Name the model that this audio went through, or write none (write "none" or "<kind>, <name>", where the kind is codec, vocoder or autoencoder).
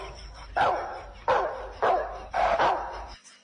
none